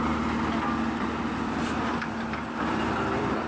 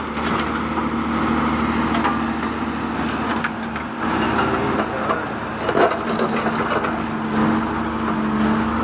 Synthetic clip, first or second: first